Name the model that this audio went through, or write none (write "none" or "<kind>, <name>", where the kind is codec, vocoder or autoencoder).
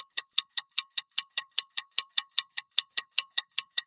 vocoder, BigVGAN v2